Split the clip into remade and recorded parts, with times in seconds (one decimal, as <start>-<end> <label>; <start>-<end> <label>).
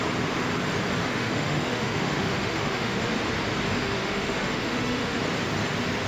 0.0-1.0 recorded; 1.0-3.1 remade; 3.1-3.7 recorded; 3.7-5.2 remade; 5.2-6.1 recorded